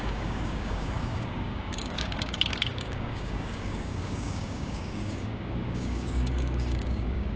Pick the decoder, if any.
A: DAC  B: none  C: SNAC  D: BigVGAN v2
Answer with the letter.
A